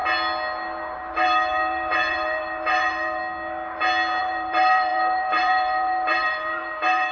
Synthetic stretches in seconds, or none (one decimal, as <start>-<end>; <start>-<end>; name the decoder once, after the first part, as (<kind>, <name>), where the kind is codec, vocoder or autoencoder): 1.1-3.2 (vocoder, BigVGAN v2); 4.2-7.1